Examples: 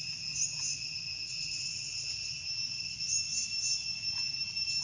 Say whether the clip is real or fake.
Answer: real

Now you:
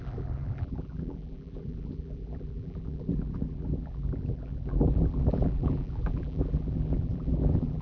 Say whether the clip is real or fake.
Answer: fake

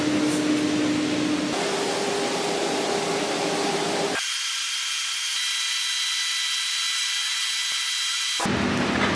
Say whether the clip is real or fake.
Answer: real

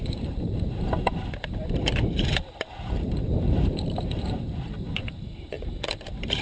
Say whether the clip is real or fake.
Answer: fake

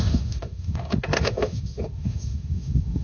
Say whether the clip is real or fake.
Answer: fake